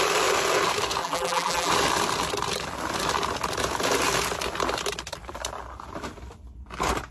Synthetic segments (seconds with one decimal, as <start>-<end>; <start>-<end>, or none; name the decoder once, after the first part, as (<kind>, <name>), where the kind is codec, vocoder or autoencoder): 1.0-1.7 (vocoder, BigVGAN v2)